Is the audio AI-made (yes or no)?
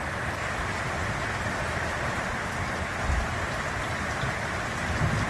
no